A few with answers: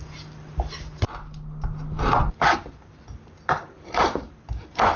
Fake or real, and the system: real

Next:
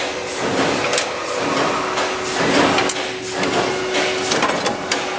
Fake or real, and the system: real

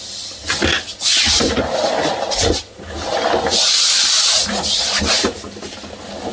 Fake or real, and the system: real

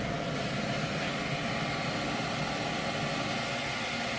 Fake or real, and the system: real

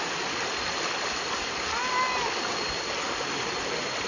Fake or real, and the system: real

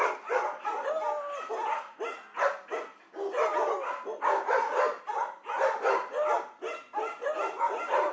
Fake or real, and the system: real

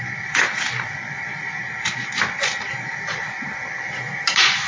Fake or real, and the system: real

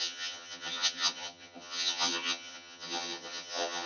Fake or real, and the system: fake, vocoder, HiFi-GAN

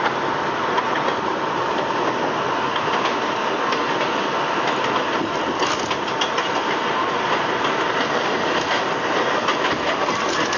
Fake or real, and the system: real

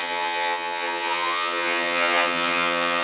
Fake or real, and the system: fake, vocoder, HiFi-GAN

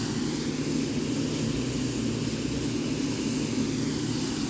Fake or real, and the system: real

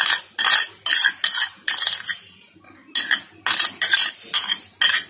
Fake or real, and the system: real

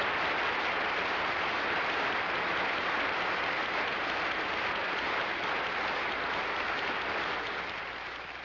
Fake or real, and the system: real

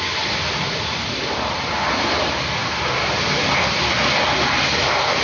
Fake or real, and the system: real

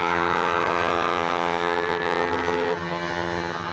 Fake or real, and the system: fake, vocoder, HiFi-GAN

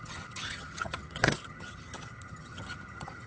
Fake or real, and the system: fake, vocoder, HiFi-GAN